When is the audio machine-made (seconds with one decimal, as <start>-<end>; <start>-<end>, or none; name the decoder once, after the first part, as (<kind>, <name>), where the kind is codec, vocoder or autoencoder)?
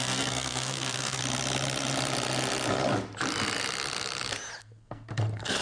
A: 0.0-1.2 (codec, SNAC); 4.6-5.6